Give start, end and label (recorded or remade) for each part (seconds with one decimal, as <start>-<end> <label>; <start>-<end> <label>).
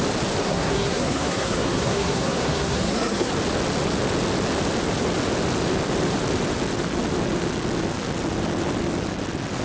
0.0-0.4 recorded; 0.4-3.3 remade; 3.3-9.6 recorded